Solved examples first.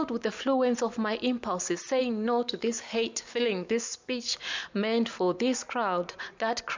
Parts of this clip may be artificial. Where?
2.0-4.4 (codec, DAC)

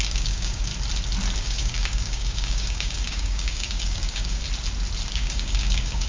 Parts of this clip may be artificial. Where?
0.0-0.7 (codec, DAC); 1.4-4.4; 5.1-6.1

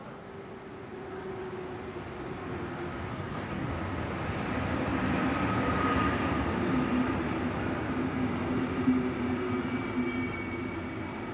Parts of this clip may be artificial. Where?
3.1-3.7 (codec, DAC)

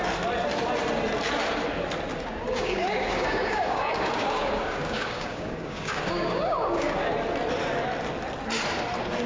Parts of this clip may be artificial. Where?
2.1-7.1 (codec, DAC)

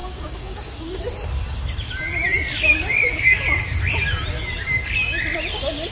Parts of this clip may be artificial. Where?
0.0-1.0 (codec, DAC); 2.7-3.4